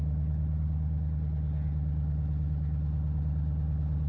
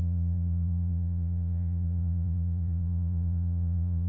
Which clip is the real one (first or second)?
first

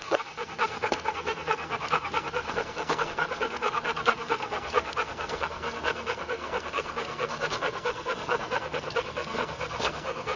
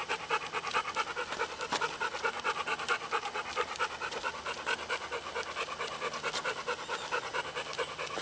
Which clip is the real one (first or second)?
second